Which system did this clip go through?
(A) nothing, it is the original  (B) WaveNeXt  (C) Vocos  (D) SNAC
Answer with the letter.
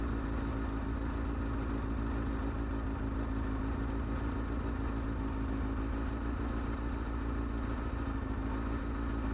A